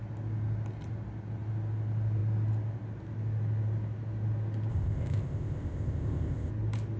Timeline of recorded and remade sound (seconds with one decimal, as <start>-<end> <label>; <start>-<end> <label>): 0.0-4.7 recorded; 4.7-6.5 remade; 6.5-7.0 recorded